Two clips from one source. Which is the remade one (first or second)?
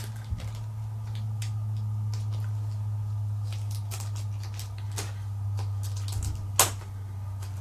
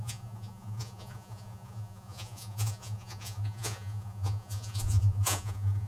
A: second